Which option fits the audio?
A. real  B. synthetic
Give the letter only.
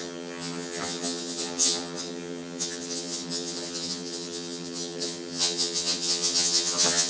B